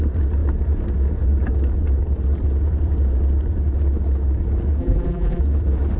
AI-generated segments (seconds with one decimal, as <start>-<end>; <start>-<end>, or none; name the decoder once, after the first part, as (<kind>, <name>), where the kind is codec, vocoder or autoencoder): 4.8-5.4 (vocoder, BigVGAN v2)